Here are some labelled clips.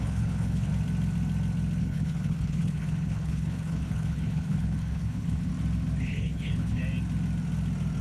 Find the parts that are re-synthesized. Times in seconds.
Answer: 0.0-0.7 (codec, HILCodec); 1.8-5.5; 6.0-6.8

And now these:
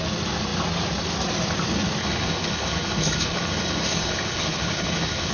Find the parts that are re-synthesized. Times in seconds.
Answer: 2.0-5.3 (codec, HILCodec)

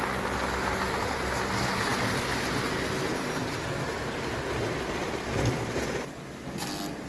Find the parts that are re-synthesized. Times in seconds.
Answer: none

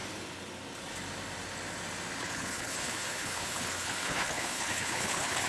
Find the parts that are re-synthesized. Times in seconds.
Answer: 2.2-5.5 (codec, HILCodec)

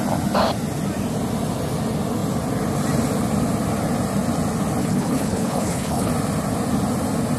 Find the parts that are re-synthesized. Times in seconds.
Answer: 4.8-6.1 (codec, HILCodec)

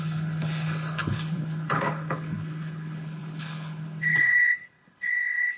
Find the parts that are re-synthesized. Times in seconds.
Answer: 0.0-5.6 (codec, HILCodec)

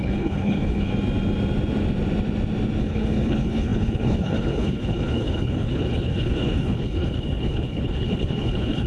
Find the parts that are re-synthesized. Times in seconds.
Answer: 0.0-0.9 (codec, HILCodec); 2.8-8.9